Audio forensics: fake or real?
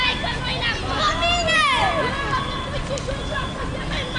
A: real